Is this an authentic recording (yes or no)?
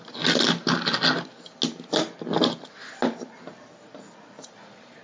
yes